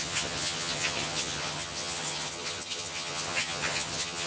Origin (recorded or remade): remade